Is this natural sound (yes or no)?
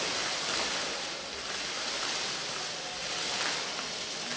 yes